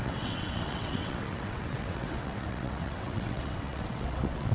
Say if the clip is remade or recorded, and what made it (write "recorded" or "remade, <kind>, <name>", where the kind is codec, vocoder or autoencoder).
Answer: remade, vocoder, WaveNeXt